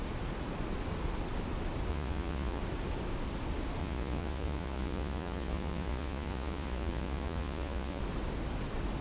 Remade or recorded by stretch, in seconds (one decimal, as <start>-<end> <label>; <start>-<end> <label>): 0.0-1.9 recorded; 1.9-2.6 remade; 2.6-3.8 recorded; 3.8-8.0 remade; 8.0-9.0 recorded